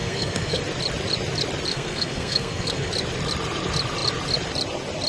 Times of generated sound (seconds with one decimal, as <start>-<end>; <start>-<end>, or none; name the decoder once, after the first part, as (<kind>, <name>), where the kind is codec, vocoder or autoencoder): 0.0-0.6 (codec, SNAC); 1.7-2.9